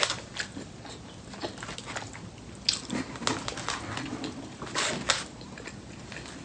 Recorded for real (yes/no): yes